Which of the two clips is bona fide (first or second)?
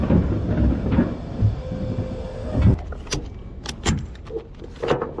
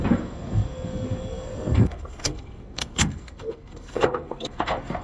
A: first